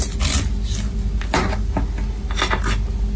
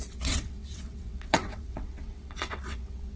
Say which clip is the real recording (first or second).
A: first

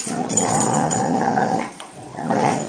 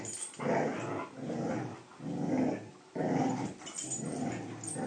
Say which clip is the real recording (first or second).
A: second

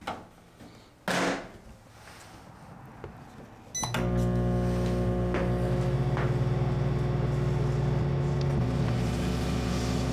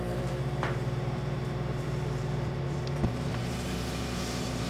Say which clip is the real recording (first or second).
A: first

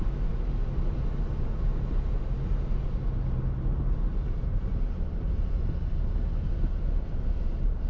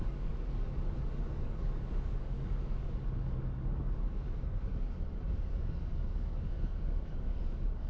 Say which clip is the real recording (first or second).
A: first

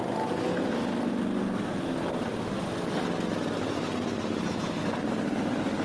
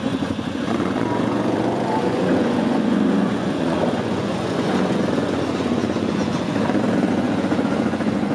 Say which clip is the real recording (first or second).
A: first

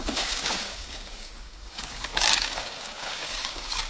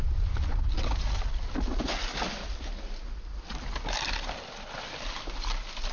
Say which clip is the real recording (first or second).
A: second